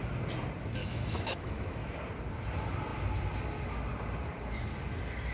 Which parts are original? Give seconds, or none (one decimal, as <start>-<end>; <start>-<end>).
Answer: 0.0-0.8; 1.9-5.3